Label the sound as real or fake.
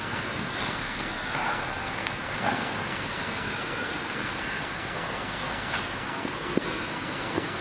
fake